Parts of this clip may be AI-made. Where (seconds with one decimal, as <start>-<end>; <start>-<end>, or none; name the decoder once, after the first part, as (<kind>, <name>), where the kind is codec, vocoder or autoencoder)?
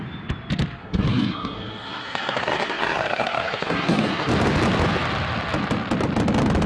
0.8-4.3 (codec, SNAC)